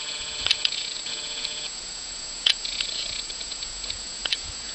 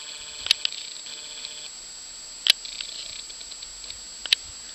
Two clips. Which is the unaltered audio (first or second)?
second